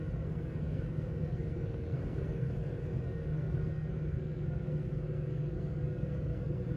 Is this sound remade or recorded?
remade